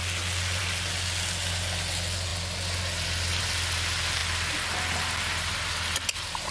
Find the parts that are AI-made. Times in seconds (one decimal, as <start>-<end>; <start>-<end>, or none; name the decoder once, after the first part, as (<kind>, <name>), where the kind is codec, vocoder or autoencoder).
none